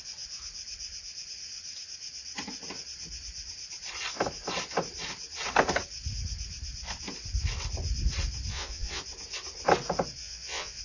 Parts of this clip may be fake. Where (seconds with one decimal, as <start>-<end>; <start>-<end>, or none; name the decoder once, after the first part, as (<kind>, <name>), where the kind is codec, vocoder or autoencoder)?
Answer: 8.5-9.0 (vocoder, Vocos); 10.2-10.8